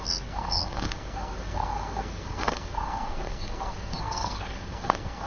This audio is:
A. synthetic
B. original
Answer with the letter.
A